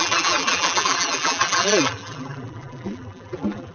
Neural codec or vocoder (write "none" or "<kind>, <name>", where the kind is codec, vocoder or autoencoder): vocoder, BigVGAN v2